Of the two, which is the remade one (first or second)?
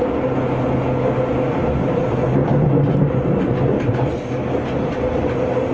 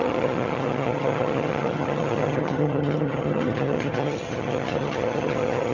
second